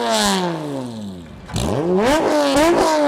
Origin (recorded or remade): recorded